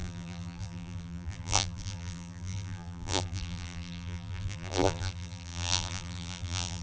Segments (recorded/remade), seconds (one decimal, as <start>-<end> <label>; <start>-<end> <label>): 0.0-6.8 remade